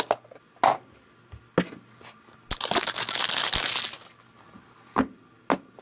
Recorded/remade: recorded